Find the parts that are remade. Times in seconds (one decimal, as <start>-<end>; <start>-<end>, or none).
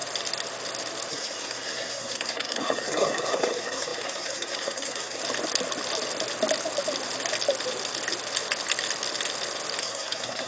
1.1-5.2; 9.8-10.5